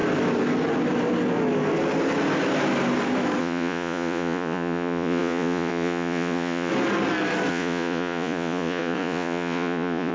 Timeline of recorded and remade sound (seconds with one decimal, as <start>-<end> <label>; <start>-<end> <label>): 0.0-3.4 recorded; 3.4-6.7 remade; 6.7-7.5 recorded; 7.5-10.1 remade